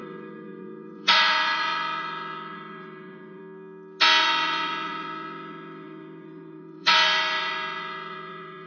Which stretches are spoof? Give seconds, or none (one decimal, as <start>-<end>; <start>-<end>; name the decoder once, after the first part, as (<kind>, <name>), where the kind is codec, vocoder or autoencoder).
0.0-3.4 (vocoder, Vocos); 4.2-8.7